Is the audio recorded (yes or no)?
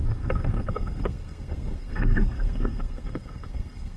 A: no